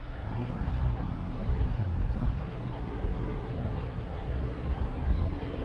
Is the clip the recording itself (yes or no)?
no